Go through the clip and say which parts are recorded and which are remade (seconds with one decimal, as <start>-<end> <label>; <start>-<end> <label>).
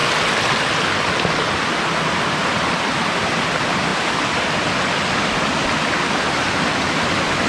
0.0-7.5 recorded